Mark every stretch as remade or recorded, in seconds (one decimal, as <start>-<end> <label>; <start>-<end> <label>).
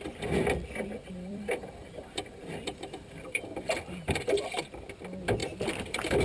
0.0-1.0 recorded; 1.0-4.6 remade; 4.6-5.4 recorded; 5.4-6.2 remade